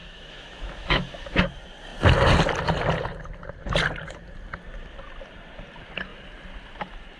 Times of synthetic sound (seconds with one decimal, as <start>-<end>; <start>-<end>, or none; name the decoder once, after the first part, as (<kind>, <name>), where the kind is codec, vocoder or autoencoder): 0.0-1.4 (autoencoder, DAC-VAE)